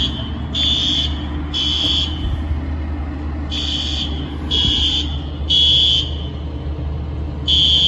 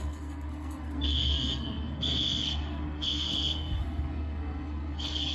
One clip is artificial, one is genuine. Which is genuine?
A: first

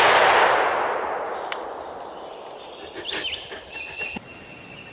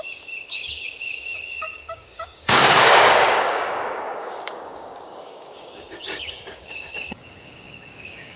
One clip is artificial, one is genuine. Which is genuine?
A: first